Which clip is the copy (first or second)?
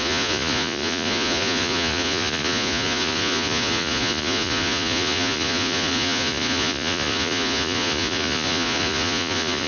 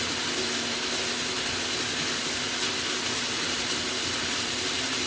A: first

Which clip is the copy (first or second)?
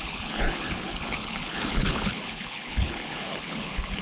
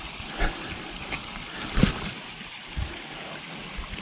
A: first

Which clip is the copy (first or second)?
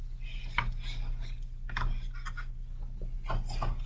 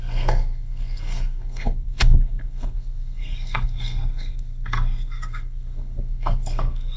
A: second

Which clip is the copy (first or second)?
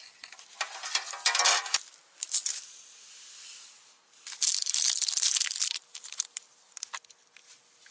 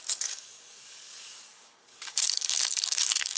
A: second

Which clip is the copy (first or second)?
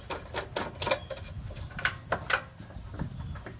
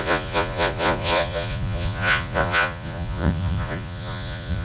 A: second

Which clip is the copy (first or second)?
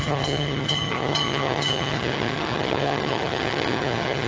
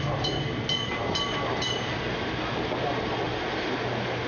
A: first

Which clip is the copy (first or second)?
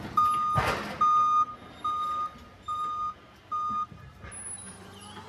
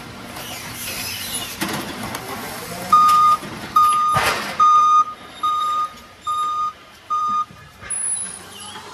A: second